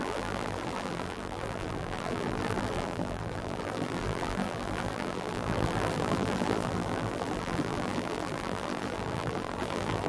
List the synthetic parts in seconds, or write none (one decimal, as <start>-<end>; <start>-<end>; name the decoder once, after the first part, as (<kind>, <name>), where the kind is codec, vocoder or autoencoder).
0.0-10.1 (vocoder, BigVGAN v2)